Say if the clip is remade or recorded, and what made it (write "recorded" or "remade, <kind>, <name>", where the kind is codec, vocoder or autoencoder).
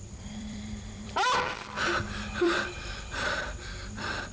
remade, vocoder, BigVGAN v2